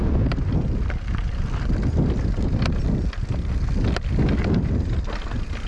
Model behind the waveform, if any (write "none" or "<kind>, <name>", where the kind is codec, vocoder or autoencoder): none